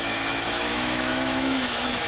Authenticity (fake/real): fake